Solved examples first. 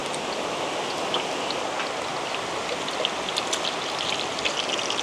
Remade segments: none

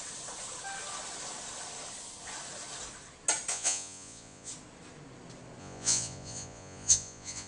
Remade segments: 3.5-4.5 (vocoder, Vocos); 5.6-7.5

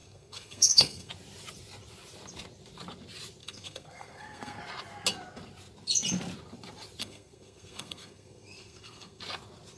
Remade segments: 0.0-1.1 (codec, SNAC); 3.4-4.6; 7.0-9.2

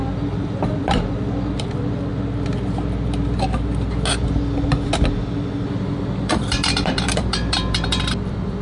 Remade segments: 0.0-2.1 (vocoder, BigVGAN v2); 5.7-8.6

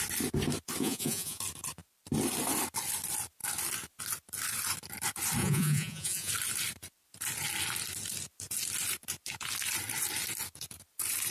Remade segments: 0.8-1.4 (vocoder, Vocos); 5.4-6.3